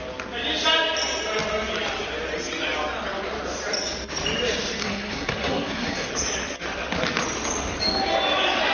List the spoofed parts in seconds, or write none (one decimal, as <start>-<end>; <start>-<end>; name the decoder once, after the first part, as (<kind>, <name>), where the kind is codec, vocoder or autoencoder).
4.8-6.1 (codec, SNAC)